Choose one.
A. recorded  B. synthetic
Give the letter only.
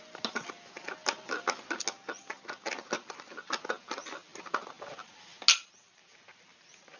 A